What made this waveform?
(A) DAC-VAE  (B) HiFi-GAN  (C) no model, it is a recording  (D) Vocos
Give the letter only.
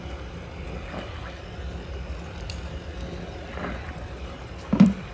C